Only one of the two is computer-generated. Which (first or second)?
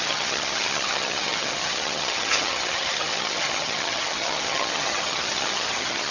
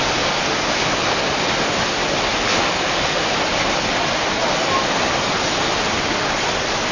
first